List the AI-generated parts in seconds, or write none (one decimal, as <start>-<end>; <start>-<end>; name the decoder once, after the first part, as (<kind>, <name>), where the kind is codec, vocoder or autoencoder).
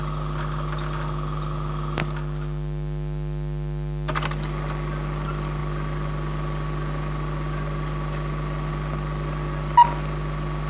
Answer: none